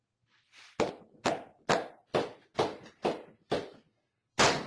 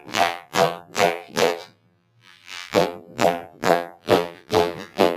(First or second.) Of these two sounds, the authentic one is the first